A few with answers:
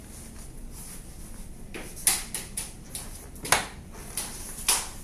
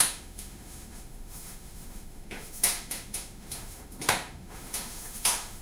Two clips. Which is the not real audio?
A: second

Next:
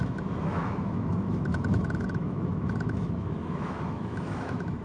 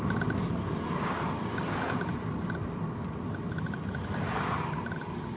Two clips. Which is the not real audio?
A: first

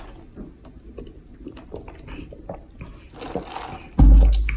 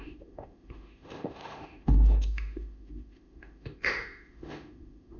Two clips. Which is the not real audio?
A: second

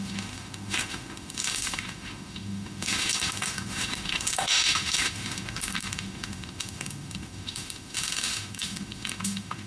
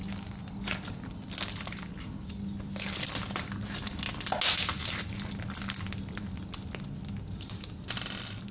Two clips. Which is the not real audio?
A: first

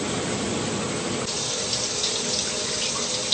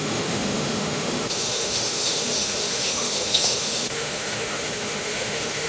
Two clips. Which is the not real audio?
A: second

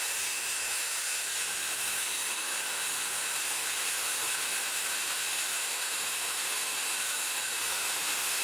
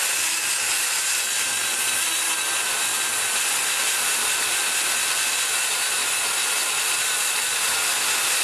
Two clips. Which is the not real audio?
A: first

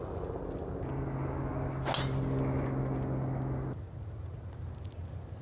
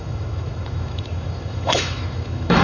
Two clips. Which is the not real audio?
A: second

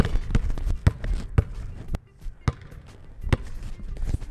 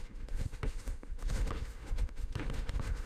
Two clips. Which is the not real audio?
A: second